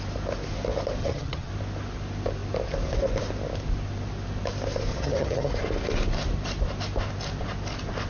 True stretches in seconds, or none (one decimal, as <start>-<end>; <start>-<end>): 0.0-1.0; 1.5-4.9; 5.5-8.1

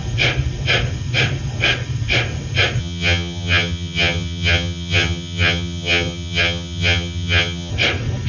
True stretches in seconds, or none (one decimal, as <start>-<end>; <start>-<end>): 0.0-2.8; 7.7-8.3